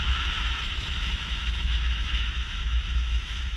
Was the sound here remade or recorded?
remade